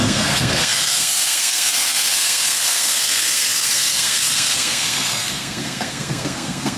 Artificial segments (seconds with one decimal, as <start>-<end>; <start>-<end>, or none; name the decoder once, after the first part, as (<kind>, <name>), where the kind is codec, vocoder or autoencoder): 0.0-6.8 (codec, SNAC)